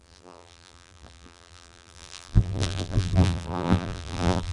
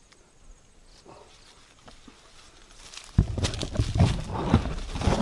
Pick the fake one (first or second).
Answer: first